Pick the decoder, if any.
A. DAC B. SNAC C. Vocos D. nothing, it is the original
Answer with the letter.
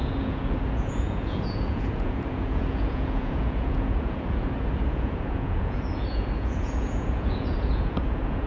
C